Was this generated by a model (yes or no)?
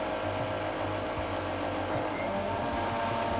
no